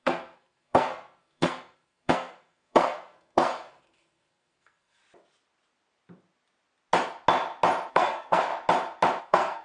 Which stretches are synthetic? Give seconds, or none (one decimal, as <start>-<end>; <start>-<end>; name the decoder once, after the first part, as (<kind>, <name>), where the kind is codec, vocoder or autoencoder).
0.0-5.0 (codec, SNAC); 7.9-8.5; 9.2-9.6

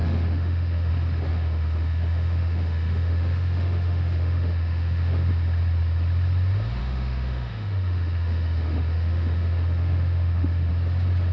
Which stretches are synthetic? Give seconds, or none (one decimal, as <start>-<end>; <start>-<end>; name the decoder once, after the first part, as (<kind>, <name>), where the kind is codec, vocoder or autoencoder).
0.0-0.9 (autoencoder, DAC-VAE); 1.3-5.3; 6.8-10.7

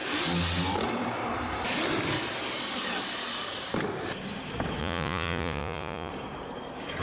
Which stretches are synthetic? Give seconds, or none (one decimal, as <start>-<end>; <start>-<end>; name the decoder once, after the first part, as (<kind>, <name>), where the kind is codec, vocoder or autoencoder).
4.8-6.1 (vocoder, Vocos)

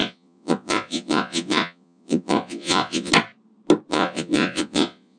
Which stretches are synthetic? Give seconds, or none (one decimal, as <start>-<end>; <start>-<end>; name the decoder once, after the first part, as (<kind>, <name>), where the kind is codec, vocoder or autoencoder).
0.0-3.1 (vocoder, Vocos); 3.9-5.2

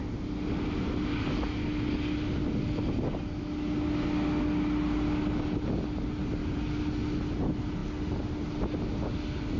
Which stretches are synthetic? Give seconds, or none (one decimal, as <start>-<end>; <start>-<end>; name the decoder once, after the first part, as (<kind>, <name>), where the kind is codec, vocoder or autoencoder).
none